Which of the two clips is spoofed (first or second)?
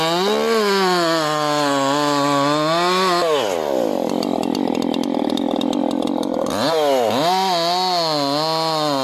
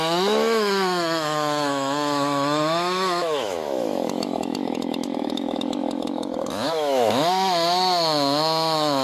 second